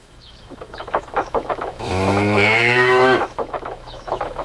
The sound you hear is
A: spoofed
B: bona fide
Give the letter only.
A